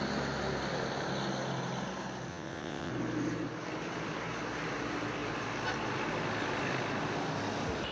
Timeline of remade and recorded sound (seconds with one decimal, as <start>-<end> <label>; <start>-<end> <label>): 0.0-2.3 recorded; 2.3-2.9 remade; 2.9-7.9 recorded